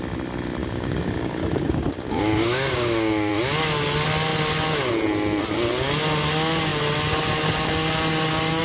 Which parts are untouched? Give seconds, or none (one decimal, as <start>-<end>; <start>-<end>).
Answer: 0.0-0.6; 3.3-8.6